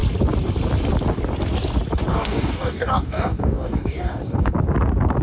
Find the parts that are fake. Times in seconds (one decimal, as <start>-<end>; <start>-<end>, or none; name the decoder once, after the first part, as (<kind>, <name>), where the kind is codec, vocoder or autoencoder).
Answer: 2.1-4.5 (codec, DAC)